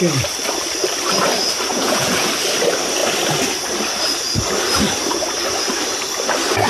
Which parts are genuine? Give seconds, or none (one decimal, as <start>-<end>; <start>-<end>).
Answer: 0.0-1.7; 2.3-6.7